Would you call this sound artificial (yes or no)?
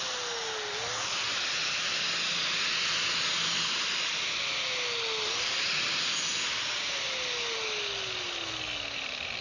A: no